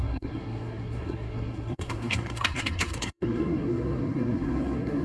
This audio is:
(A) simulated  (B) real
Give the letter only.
A